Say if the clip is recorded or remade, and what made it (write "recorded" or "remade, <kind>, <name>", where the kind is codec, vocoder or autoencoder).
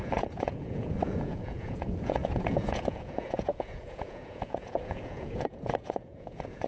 remade, vocoder, Vocos